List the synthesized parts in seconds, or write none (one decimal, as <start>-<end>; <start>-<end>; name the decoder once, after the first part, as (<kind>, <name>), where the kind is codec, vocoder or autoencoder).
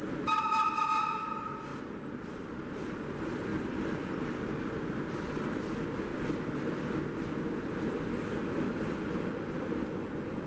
3.5-4.2 (vocoder, BigVGAN v2); 6.1-6.8